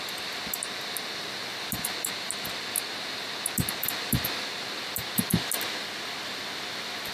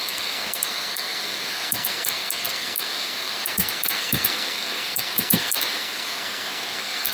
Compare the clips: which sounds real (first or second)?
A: first